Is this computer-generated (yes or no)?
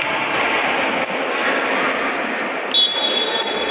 no